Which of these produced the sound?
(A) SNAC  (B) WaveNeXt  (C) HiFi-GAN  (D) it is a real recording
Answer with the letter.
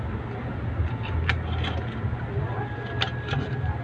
D